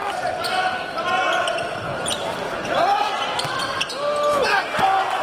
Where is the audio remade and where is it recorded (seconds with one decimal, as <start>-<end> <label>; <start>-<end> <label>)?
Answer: 0.0-1.9 recorded; 1.9-3.9 remade; 3.9-5.2 recorded